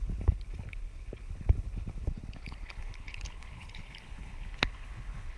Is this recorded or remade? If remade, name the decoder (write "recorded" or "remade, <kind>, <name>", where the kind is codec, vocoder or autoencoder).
remade, codec, HILCodec